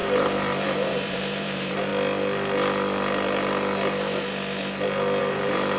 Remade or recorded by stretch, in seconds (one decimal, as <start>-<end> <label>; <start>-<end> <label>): 0.0-1.9 remade; 1.9-5.2 recorded; 5.2-5.8 remade

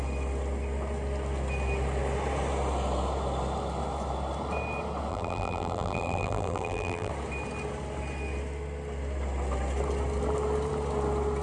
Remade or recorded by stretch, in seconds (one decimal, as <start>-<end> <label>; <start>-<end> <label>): 0.0-5.1 recorded; 5.1-7.1 remade; 7.1-11.4 recorded